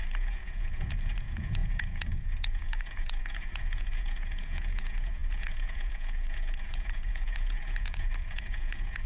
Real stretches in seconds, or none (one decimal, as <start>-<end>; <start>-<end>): none